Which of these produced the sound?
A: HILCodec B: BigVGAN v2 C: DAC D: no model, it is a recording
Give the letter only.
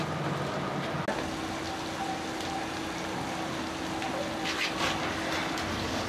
D